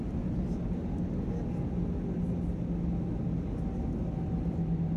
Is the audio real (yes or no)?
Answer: yes